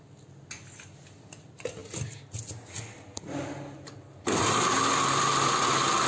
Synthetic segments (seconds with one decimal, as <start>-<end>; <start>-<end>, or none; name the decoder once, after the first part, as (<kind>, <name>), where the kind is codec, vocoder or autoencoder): none